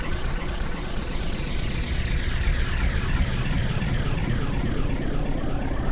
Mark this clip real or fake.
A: fake